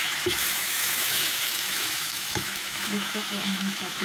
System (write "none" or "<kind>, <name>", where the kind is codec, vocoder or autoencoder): autoencoder, DAC-VAE